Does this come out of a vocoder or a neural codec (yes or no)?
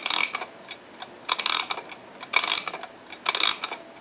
no